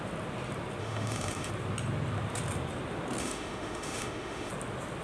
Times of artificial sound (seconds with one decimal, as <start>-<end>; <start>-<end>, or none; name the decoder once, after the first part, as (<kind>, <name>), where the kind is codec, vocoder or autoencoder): 0.8-1.5 (autoencoder, DAC-VAE); 3.2-4.5